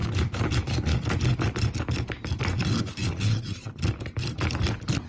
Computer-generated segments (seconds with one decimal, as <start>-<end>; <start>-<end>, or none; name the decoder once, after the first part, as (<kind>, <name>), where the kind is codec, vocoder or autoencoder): 3.0-3.8 (vocoder, Vocos)